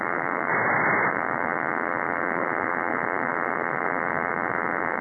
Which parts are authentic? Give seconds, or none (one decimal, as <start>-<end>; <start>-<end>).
0.5-1.1